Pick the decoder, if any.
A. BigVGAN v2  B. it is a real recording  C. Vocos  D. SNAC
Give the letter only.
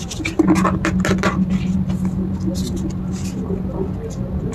B